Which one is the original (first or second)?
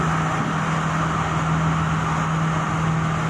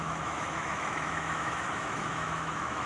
first